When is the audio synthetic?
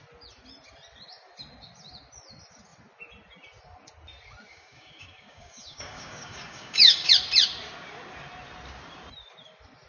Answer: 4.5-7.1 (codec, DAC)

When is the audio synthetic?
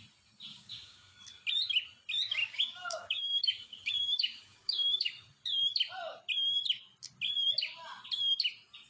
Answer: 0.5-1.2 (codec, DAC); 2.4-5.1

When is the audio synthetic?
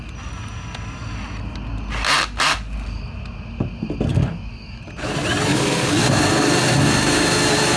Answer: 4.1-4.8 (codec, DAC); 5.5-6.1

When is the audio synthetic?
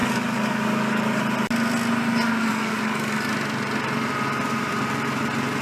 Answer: 0.0-1.2 (codec, DAC); 2.5-3.3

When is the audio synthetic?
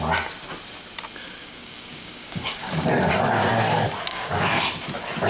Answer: 1.4-2.7 (codec, DAC); 4.1-4.6